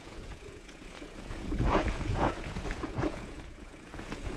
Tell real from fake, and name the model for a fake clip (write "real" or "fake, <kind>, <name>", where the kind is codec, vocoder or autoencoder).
fake, vocoder, Vocos